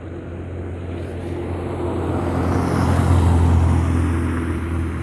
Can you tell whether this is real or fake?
real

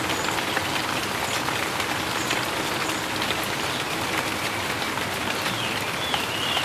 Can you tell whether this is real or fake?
real